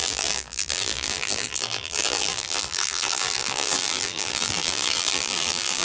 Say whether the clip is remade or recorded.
remade